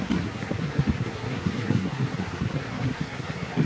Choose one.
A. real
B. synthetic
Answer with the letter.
B